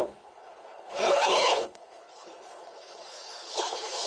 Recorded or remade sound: remade